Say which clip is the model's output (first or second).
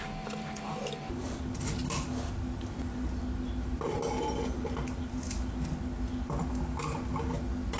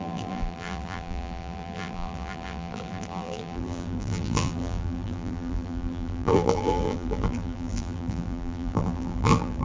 second